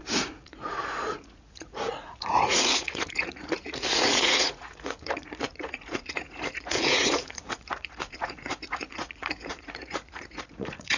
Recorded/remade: remade